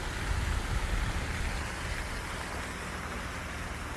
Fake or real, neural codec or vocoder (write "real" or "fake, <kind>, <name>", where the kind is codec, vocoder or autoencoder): real